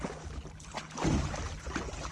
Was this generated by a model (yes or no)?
no